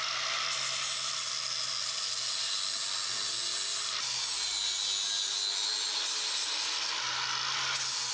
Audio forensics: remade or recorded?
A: recorded